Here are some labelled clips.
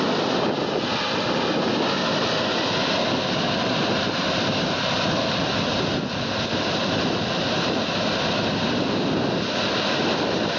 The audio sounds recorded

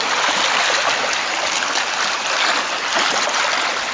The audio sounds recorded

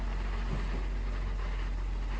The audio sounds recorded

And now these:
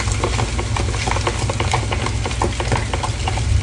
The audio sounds recorded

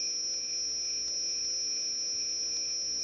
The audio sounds recorded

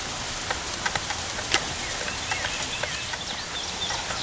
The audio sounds recorded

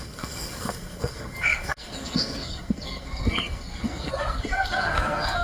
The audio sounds remade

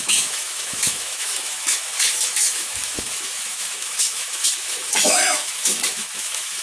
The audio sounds remade